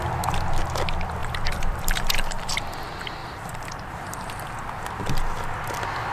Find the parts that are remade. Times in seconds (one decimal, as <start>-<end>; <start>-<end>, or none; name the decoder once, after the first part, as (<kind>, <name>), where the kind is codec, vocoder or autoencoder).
1.2-2.5 (vocoder, BigVGAN v2); 3.2-4.3